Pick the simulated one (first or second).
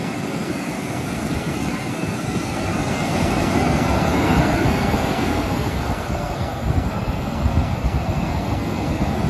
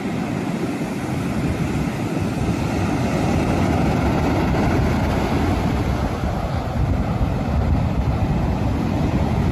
first